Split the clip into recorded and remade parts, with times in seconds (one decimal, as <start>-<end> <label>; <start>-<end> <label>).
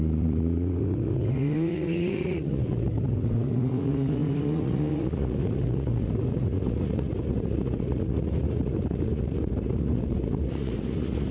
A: 0.0-11.3 remade